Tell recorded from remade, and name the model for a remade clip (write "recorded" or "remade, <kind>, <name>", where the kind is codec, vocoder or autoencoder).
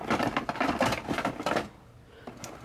recorded